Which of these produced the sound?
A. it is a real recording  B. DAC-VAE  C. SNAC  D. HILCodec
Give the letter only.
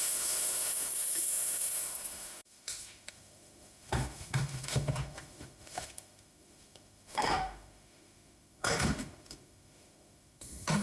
B